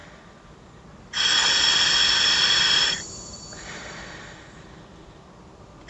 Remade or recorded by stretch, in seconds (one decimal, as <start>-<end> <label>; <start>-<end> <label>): 0.0-1.0 recorded; 1.0-5.9 remade